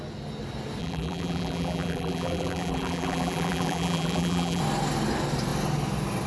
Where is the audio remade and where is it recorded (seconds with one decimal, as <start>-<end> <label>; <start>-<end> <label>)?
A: 0.0-0.8 recorded; 0.8-4.6 remade; 4.6-6.3 recorded